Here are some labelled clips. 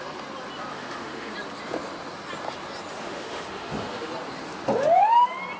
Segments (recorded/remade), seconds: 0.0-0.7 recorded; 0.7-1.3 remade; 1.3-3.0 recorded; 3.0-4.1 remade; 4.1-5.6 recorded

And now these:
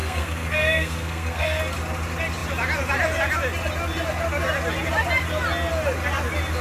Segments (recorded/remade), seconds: 0.0-1.6 remade; 1.6-6.6 recorded

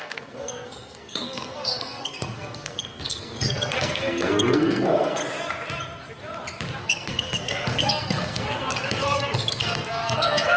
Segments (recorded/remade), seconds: 0.0-5.2 remade; 5.2-6.8 recorded; 6.8-10.6 remade

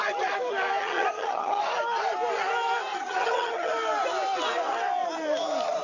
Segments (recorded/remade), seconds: 0.0-0.8 recorded; 0.8-1.6 remade; 1.6-2.9 recorded; 2.9-3.7 remade; 3.7-5.8 recorded

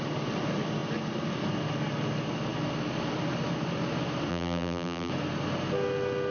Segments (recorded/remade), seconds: 0.0-4.3 recorded; 4.3-5.1 remade; 5.1-6.3 recorded